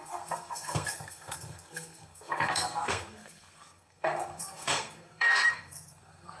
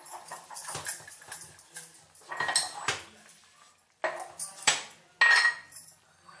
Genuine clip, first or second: second